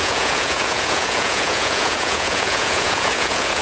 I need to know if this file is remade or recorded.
remade